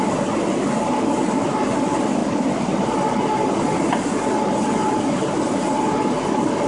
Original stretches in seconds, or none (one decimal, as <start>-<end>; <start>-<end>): 0.0-6.7